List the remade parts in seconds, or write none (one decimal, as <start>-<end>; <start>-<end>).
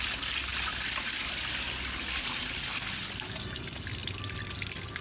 0.5-3.5; 4.0-5.0